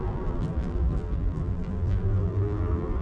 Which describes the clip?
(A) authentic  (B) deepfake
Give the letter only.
B